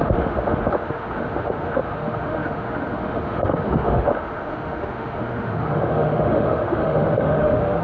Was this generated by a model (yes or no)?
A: yes